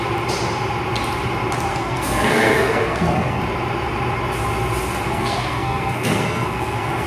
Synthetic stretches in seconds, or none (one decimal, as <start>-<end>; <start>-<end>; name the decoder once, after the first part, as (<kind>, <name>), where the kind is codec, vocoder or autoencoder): 1.7-3.4 (codec, SNAC); 5.1-7.1

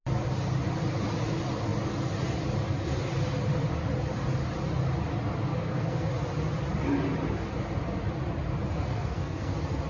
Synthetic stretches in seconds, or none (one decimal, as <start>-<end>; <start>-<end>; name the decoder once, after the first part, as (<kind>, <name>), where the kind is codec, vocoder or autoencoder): 5.5-6.1 (codec, SNAC); 8.9-9.5

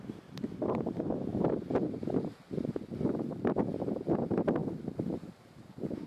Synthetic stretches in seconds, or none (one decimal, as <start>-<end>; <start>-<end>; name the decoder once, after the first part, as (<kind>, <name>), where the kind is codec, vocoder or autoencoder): none

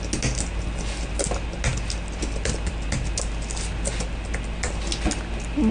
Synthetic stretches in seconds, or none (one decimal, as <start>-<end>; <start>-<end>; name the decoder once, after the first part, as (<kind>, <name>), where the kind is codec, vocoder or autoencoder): none

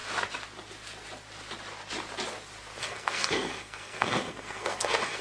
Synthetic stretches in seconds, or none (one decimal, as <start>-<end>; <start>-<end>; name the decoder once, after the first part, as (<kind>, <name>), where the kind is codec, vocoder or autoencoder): 2.8-5.2 (codec, SNAC)